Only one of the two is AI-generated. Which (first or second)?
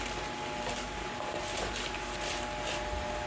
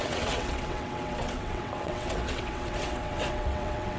second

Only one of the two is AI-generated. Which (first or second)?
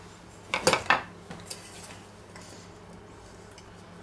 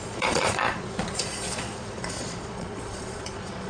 second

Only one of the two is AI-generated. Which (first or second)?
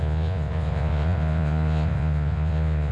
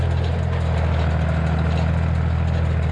first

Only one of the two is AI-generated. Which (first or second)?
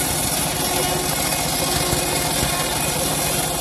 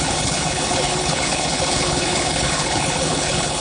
second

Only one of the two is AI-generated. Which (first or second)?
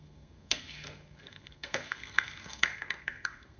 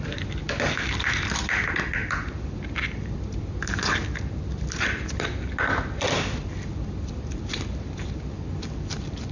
first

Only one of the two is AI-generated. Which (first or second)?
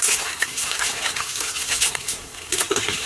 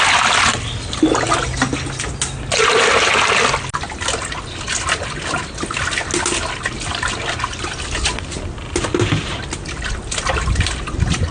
first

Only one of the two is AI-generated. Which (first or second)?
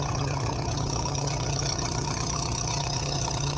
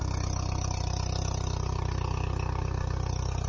first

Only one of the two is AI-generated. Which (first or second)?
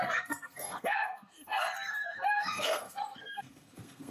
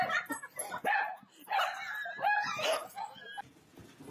first